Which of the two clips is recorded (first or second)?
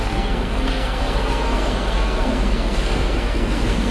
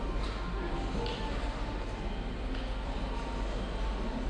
second